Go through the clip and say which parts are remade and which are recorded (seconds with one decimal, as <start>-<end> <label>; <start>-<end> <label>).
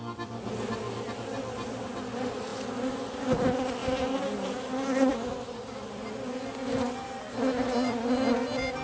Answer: 0.0-8.8 recorded